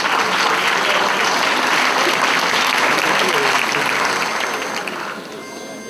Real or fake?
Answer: real